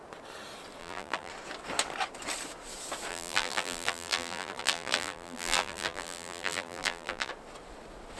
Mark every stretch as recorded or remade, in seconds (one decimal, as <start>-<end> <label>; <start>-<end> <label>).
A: 0.0-0.8 recorded; 0.8-1.3 remade; 1.3-3.1 recorded; 3.1-7.3 remade; 7.3-8.2 recorded

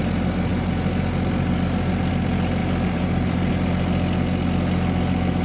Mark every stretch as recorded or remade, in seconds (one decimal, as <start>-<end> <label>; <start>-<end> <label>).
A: 0.0-2.6 recorded; 2.6-3.5 remade; 3.5-5.4 recorded

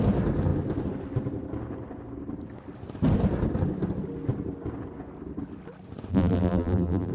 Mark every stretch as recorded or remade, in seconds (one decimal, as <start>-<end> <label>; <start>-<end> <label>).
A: 0.0-6.1 recorded; 6.1-7.1 remade